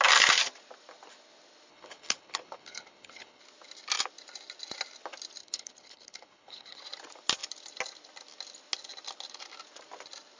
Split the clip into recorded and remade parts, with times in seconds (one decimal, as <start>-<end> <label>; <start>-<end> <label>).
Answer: 0.0-1.7 recorded; 1.7-3.4 remade; 3.4-5.4 recorded; 5.4-6.8 remade; 6.8-10.4 recorded